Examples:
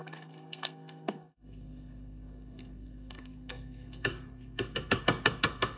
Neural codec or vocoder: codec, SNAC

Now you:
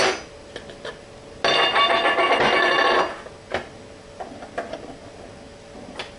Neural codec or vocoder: none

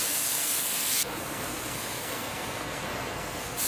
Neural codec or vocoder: codec, SNAC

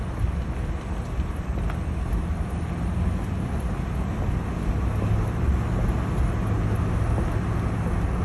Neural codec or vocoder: none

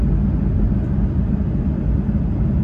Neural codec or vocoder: none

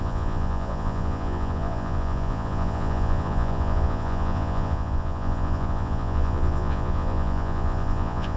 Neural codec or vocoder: vocoder, Vocos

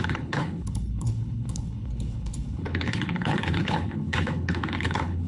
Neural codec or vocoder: codec, HILCodec